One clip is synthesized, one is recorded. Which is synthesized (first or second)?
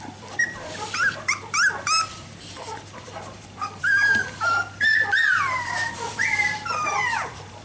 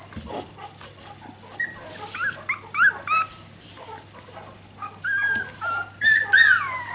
first